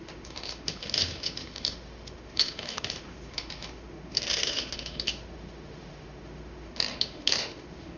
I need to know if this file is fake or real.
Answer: fake